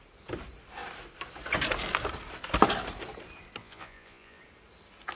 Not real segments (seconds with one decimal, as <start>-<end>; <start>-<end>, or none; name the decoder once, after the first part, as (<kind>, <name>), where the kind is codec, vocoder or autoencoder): 3.6-4.4 (vocoder, Vocos)